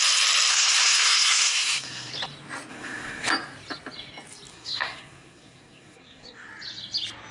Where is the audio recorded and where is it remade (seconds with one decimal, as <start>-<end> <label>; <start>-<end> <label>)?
0.0-0.5 recorded; 0.5-2.1 remade; 2.1-2.7 recorded; 2.7-3.3 remade; 3.3-4.5 recorded; 4.5-6.5 remade; 6.5-7.3 recorded